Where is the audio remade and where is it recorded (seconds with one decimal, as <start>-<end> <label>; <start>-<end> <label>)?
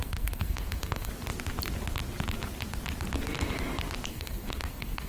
0.0-1.1 remade; 1.1-4.1 recorded; 4.1-5.1 remade